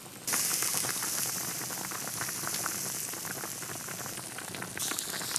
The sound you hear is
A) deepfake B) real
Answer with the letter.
B